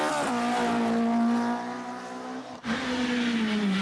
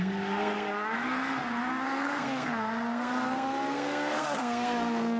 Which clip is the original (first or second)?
first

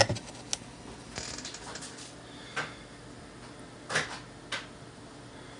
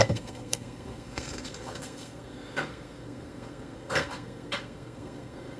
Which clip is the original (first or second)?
first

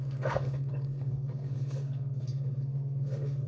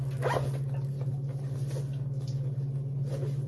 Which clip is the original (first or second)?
second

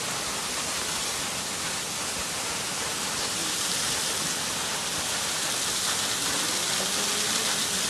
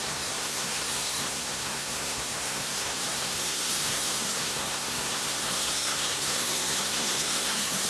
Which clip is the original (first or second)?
first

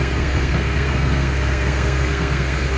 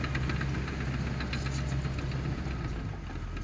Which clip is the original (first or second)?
second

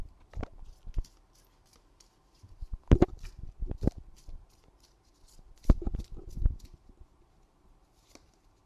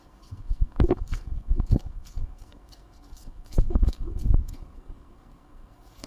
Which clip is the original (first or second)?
first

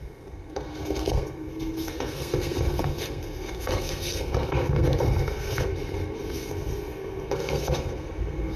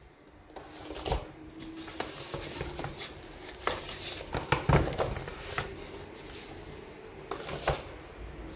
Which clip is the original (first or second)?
second